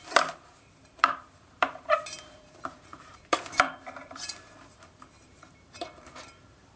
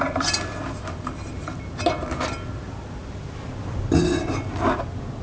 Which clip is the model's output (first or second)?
first